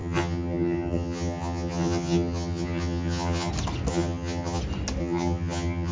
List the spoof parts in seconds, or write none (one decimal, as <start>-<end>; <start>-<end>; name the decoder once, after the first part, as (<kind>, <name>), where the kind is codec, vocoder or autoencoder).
0.0-3.5 (vocoder, HiFi-GAN); 3.9-4.6; 5.0-5.9